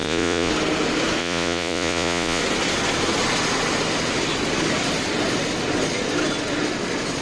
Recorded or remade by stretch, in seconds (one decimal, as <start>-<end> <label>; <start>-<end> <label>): 0.0-0.5 remade; 0.5-1.2 recorded; 1.2-2.4 remade; 2.4-7.2 recorded